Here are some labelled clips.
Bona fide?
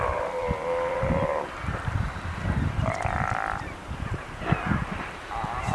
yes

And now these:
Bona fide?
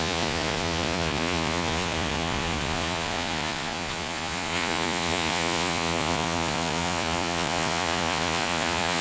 no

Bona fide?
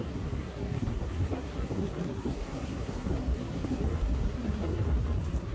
no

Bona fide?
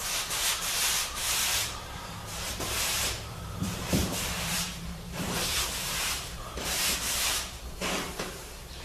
no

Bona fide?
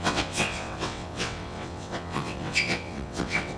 no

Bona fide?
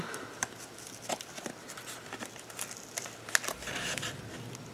yes